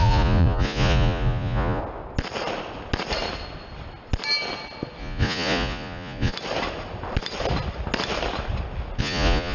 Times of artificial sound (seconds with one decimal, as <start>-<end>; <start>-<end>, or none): 0.0-1.8; 5.0-6.3; 9.0-9.5